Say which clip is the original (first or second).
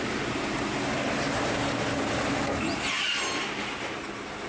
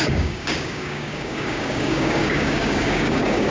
first